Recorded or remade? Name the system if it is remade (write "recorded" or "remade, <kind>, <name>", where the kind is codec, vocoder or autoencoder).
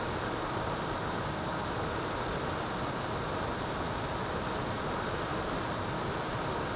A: recorded